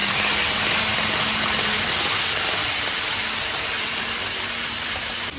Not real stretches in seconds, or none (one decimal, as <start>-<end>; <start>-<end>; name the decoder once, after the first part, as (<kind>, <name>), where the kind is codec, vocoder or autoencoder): none